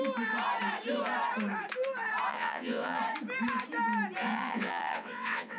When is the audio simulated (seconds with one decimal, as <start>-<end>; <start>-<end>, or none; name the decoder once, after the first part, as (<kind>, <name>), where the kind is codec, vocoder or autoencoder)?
2.3-3.0 (vocoder, WaveNeXt); 4.2-5.6